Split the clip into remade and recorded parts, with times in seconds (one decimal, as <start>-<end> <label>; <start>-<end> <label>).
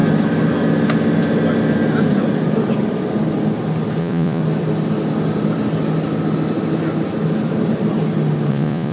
0.0-4.0 recorded; 4.0-4.4 remade; 4.4-8.5 recorded; 8.5-8.9 remade